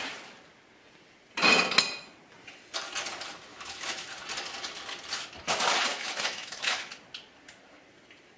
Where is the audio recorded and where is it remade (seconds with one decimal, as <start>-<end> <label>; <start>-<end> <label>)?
0.0-3.5 recorded; 3.5-4.1 remade; 4.1-5.9 recorded; 5.9-6.9 remade; 6.9-8.4 recorded